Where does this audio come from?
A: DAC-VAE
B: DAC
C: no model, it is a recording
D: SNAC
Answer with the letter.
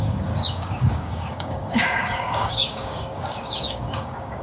B